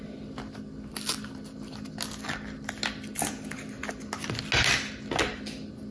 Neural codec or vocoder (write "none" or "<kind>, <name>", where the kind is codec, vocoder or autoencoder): none